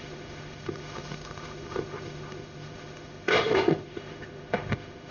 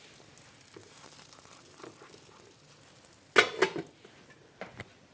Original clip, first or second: second